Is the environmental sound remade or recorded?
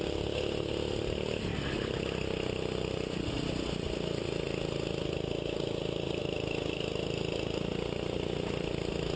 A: recorded